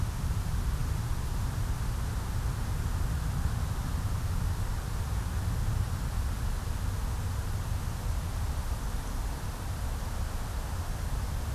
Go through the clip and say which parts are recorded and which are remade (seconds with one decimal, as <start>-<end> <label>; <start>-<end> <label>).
0.0-11.5 recorded

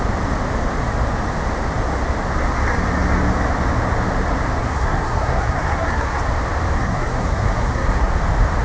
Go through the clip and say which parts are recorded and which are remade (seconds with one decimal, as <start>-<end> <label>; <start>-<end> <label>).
0.0-4.6 recorded; 4.6-6.2 remade; 6.2-6.8 recorded; 6.8-8.1 remade; 8.1-8.6 recorded

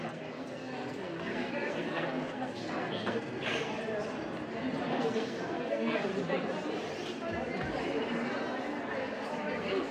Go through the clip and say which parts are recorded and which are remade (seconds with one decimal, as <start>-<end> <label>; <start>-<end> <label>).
0.0-3.7 remade; 3.7-4.9 recorded; 4.9-6.1 remade; 6.1-9.5 recorded; 9.5-9.9 remade

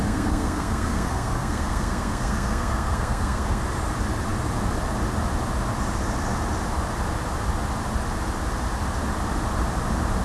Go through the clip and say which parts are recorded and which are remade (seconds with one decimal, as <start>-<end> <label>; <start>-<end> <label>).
0.0-3.6 remade; 3.6-10.2 recorded